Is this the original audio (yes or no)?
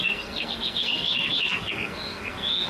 no